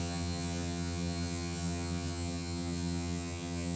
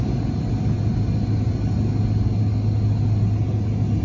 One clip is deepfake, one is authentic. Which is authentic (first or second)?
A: second